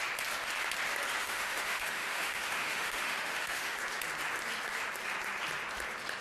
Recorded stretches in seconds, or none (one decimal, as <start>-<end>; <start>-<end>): 0.0-1.2; 3.8-6.2